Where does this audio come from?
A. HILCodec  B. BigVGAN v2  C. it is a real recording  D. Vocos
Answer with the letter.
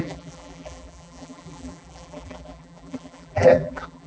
B